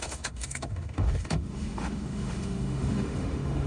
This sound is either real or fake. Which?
fake